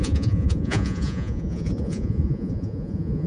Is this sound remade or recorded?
remade